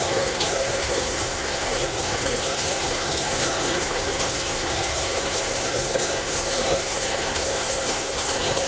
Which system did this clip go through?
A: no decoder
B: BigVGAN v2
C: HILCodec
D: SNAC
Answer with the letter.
D